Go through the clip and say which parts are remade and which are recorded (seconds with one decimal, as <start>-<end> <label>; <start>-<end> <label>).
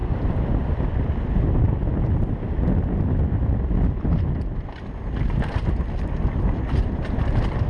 0.0-7.7 recorded